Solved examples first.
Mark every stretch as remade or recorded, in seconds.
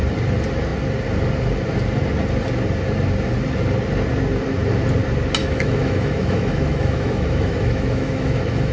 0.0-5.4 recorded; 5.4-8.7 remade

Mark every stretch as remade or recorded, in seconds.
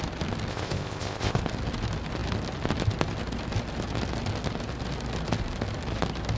0.0-0.5 recorded; 0.5-1.4 remade; 1.4-6.4 recorded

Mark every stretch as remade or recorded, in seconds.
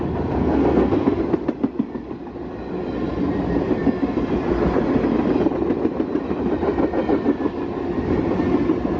0.0-0.4 recorded; 0.4-1.2 remade; 1.2-9.0 recorded